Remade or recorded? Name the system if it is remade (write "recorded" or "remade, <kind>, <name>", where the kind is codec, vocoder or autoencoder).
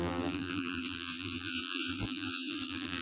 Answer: remade, vocoder, BigVGAN v2